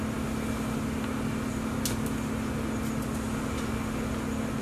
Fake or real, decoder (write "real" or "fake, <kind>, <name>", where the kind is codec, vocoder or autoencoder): real